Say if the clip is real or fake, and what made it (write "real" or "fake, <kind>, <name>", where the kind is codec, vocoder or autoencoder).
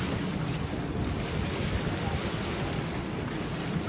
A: real